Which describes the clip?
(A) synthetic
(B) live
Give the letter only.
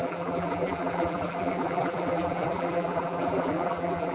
A